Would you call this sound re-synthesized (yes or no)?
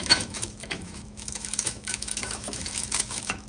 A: yes